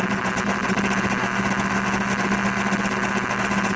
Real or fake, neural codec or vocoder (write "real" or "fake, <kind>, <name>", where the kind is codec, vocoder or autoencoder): real